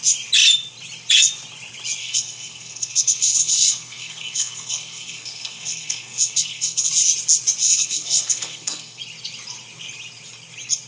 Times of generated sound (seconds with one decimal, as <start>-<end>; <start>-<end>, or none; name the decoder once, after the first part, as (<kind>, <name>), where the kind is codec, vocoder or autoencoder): 2.0-6.9 (codec, SNAC); 7.6-9.0